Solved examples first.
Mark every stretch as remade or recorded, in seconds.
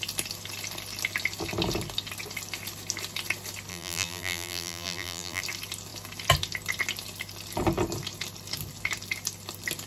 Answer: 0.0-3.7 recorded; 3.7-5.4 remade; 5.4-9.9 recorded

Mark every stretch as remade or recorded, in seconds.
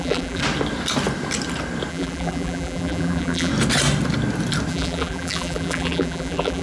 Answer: 0.0-0.4 remade; 0.4-1.9 recorded; 1.9-3.5 remade; 3.5-4.7 recorded; 4.7-6.6 remade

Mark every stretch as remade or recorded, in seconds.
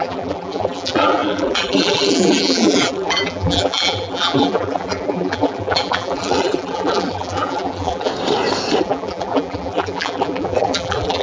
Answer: 0.0-8.1 remade; 8.1-8.8 recorded; 8.8-11.2 remade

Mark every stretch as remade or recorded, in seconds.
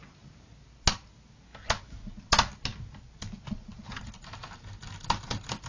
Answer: 0.0-5.7 recorded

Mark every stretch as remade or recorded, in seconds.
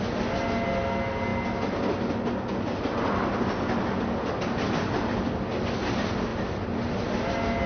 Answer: 0.0-6.3 recorded; 6.3-7.0 remade; 7.0-7.7 recorded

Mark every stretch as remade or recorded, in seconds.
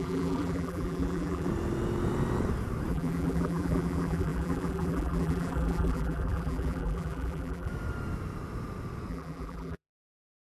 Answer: 0.0-1.5 remade; 1.5-2.9 recorded; 2.9-7.7 remade; 7.7-9.1 recorded; 9.1-10.5 remade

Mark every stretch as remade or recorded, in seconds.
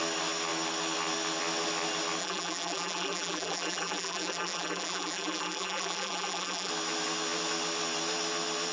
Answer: 0.0-2.2 recorded; 2.2-6.7 remade; 6.7-8.7 recorded